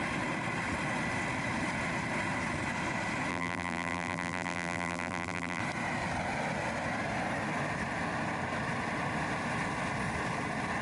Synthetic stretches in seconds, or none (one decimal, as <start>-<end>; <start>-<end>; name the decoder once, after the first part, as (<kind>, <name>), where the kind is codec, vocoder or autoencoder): 3.3-5.6 (vocoder, BigVGAN v2)